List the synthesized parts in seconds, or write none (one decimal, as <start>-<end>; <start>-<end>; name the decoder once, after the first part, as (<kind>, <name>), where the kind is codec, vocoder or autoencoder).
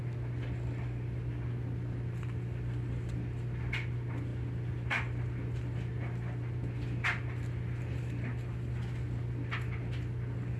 none